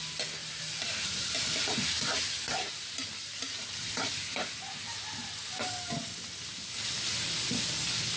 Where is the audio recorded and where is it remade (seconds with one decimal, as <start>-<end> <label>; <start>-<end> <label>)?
0.0-0.4 recorded; 0.4-2.9 remade; 2.9-3.3 recorded; 3.3-3.9 remade; 3.9-8.2 recorded